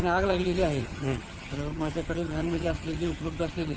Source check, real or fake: fake